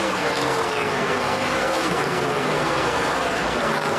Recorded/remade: remade